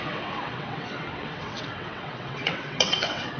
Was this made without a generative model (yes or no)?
no